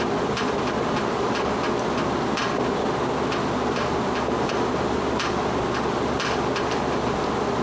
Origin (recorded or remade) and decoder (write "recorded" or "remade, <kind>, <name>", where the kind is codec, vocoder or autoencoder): recorded